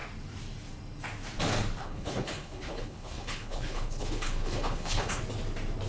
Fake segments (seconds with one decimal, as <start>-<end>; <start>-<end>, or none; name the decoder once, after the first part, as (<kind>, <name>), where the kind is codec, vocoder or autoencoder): 1.8-5.2 (codec, HILCodec)